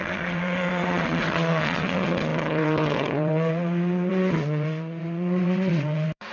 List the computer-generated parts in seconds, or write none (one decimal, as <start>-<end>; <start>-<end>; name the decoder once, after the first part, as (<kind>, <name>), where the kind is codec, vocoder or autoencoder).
0.0-6.3 (vocoder, WaveNeXt)